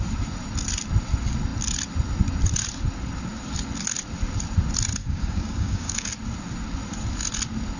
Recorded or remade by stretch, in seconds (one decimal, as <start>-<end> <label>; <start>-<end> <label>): 0.0-5.0 recorded; 5.0-6.1 remade; 6.1-7.8 recorded